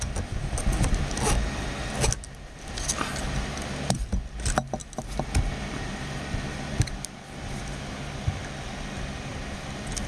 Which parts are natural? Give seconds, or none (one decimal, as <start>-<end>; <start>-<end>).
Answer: 0.0-10.1